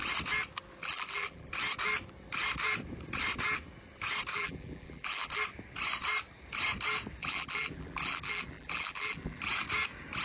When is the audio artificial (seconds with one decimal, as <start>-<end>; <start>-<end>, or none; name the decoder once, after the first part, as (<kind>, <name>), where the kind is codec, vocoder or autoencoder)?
0.8-1.5 (vocoder, BigVGAN v2); 4.3-5.4; 7.2-9.4